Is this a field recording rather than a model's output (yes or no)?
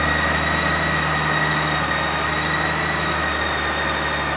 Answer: yes